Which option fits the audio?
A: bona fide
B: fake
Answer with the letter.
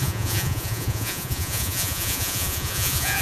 B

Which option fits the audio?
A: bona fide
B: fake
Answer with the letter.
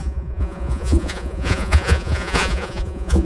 B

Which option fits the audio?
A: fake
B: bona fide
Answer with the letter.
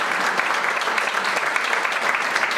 B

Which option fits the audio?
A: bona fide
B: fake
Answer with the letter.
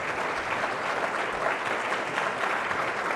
A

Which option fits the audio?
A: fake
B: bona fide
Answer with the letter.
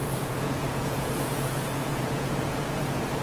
A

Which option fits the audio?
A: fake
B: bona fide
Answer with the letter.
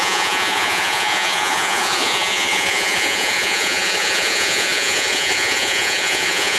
A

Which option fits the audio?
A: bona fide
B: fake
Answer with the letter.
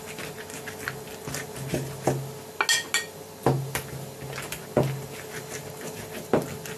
A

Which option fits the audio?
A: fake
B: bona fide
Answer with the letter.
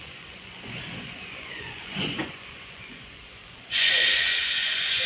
A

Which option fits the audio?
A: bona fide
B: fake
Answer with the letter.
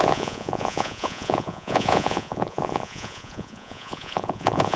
B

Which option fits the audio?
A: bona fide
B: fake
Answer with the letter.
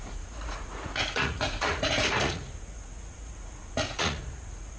B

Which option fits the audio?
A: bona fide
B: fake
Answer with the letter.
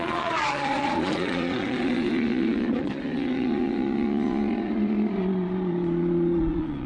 B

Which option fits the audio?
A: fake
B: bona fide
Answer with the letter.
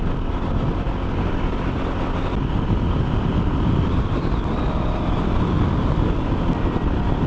B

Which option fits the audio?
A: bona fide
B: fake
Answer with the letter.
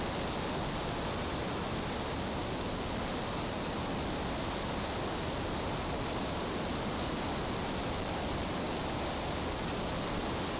A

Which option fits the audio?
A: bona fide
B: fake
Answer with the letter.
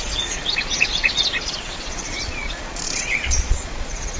B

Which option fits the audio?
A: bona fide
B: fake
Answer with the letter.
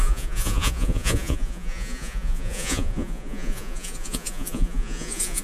B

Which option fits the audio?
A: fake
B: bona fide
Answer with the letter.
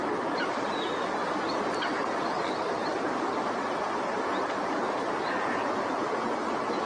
B